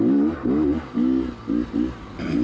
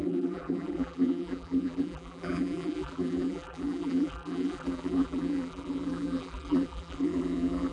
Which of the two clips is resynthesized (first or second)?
second